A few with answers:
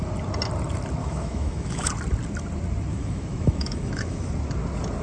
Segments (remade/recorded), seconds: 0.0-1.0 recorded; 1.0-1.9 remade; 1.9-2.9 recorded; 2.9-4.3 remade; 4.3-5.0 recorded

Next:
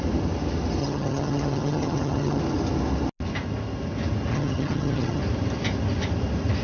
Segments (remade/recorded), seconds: 0.0-0.8 recorded; 0.8-2.4 remade; 2.4-4.3 recorded; 4.3-5.2 remade; 5.2-6.6 recorded